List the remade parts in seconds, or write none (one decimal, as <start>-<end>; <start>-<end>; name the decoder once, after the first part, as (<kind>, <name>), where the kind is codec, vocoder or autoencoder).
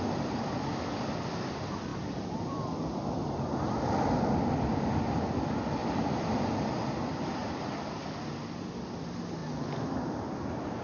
1.9-4.9 (vocoder, BigVGAN v2); 5.8-6.4; 7.4-8.0; 9.4-10.2